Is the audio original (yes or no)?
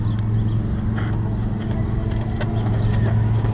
yes